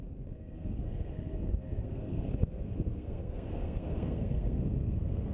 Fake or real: fake